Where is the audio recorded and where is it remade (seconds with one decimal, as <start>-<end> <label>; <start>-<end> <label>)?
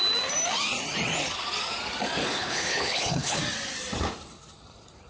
0.0-2.2 recorded; 2.2-3.4 remade; 3.4-5.1 recorded